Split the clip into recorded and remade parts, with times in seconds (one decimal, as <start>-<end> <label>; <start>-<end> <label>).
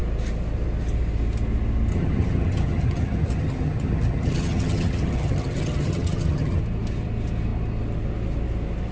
0.0-1.9 recorded; 1.9-6.6 remade; 6.6-8.9 recorded